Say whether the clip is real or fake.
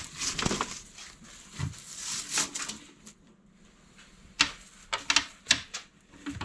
real